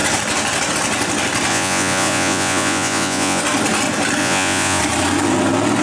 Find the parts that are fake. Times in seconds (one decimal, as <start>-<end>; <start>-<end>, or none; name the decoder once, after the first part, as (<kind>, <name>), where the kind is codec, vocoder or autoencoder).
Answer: 1.5-3.4 (vocoder, Vocos); 4.2-4.8

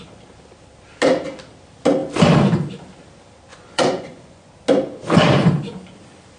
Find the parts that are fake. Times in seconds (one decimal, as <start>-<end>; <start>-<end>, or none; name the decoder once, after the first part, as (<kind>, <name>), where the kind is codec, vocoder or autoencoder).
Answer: 3.5-4.5 (vocoder, Vocos)

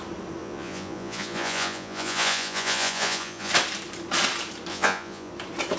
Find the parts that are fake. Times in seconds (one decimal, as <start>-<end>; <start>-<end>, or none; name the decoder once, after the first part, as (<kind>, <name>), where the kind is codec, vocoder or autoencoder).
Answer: 0.4-3.5 (vocoder, Vocos); 4.7-5.3

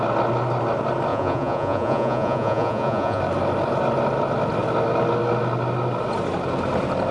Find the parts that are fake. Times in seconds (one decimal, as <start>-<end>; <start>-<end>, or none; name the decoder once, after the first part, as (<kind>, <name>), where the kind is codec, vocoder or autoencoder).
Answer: 1.1-3.2 (vocoder, Vocos)

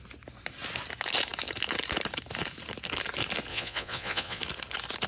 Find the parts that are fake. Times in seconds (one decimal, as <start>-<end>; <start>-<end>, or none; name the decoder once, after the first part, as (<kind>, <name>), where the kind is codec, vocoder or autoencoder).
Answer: 3.5-4.4 (vocoder, Vocos)

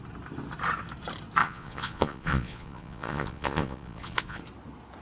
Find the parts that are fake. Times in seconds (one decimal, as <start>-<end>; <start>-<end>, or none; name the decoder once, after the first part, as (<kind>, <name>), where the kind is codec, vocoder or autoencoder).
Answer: 1.4-4.4 (vocoder, Vocos)

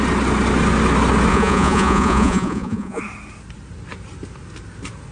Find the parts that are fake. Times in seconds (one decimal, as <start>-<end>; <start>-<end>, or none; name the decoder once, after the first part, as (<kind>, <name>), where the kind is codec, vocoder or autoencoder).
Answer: 1.3-3.0 (vocoder, Vocos)